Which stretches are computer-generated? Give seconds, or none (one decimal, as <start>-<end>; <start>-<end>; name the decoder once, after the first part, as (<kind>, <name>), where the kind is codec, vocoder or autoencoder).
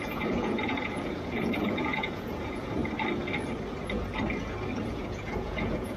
0.0-2.8 (vocoder, Vocos); 4.9-6.0